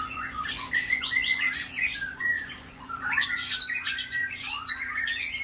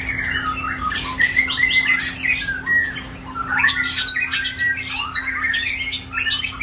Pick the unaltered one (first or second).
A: second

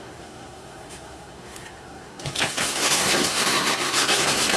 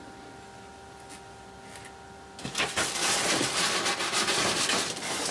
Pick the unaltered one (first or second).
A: second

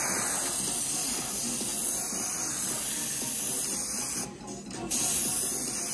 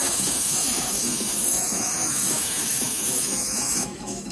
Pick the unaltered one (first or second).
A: first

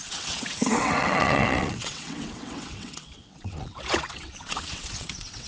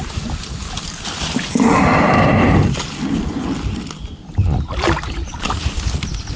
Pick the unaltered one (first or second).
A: second